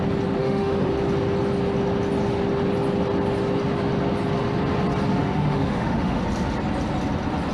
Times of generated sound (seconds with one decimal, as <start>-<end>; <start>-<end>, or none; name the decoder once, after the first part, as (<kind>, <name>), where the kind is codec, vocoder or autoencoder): 0.4-0.9 (autoencoder, DAC-VAE); 5.2-6.2